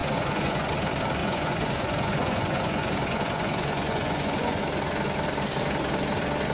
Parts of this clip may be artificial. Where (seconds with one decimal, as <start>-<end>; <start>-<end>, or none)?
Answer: 0.0-0.7; 1.2-4.6